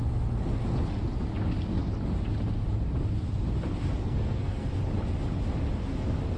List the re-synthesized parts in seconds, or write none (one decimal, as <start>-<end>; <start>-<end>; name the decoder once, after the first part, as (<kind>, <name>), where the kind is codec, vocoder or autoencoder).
4.0-4.7 (codec, SNAC)